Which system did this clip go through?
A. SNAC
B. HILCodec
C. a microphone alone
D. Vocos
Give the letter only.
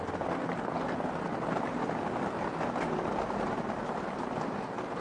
C